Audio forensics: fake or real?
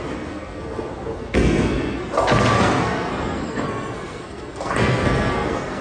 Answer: fake